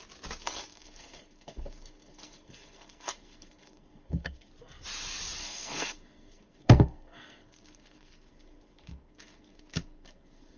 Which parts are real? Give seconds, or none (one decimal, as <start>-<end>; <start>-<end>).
0.0-0.4; 4.5-5.4